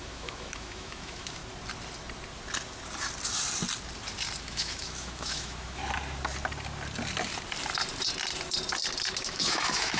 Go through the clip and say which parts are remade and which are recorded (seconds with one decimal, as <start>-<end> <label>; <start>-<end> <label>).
0.0-1.4 remade; 1.4-4.4 recorded; 4.4-5.8 remade; 5.8-9.2 recorded; 9.2-10.0 remade